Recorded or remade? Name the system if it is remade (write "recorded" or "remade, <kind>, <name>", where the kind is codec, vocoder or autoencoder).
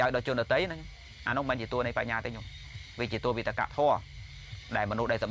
recorded